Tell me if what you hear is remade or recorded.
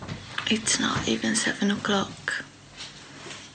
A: recorded